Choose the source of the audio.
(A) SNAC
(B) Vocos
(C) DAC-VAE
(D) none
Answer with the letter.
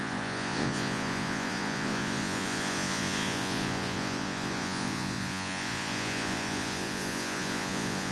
B